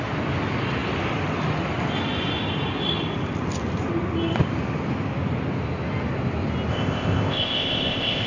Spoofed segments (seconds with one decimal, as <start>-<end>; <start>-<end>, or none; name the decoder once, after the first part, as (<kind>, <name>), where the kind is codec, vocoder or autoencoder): 6.7-8.3 (codec, ZipCodec)